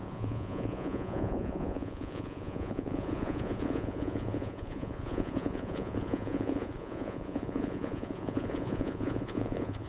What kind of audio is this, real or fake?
fake